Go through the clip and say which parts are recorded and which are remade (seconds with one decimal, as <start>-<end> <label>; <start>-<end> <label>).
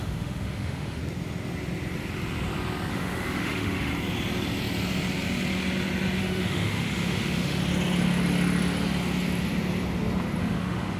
0.0-1.0 remade; 1.0-2.9 recorded; 2.9-3.9 remade; 3.9-6.2 recorded; 6.2-7.6 remade; 7.6-10.4 recorded; 10.4-11.0 remade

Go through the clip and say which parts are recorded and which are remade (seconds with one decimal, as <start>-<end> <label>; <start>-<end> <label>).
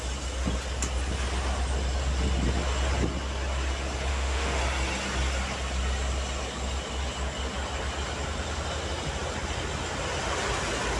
0.0-4.1 recorded; 4.1-4.6 remade; 4.6-11.0 recorded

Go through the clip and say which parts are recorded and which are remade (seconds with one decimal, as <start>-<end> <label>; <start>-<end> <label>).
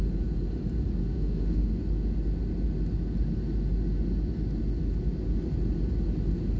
0.0-1.1 recorded; 1.1-1.7 remade; 1.7-6.6 recorded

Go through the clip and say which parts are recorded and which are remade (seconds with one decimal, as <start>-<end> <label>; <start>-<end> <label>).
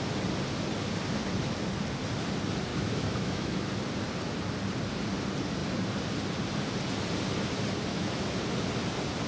0.0-2.7 recorded; 2.7-3.7 remade; 3.7-7.9 recorded; 7.9-8.4 remade; 8.4-9.3 recorded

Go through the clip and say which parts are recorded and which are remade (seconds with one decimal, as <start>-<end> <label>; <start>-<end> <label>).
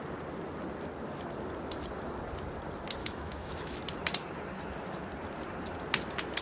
0.0-3.0 recorded; 3.0-3.8 remade; 3.8-6.4 recorded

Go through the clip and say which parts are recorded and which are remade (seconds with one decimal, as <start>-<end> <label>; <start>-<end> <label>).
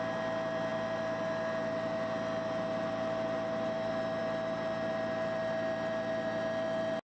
0.0-7.0 recorded